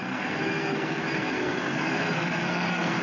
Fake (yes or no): yes